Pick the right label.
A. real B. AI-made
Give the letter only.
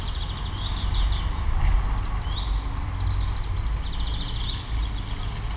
A